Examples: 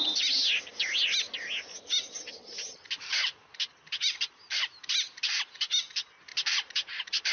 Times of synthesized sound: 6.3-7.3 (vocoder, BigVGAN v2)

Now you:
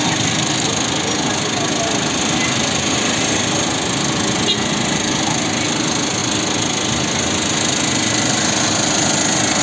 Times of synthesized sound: none

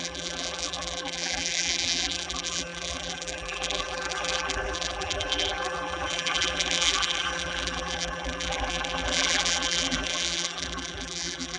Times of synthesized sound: 0.0-11.6 (vocoder, BigVGAN v2)

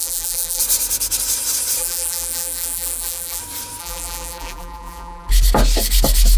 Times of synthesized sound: 0.0-0.6 (vocoder, BigVGAN v2); 1.8-3.4; 3.8-5.3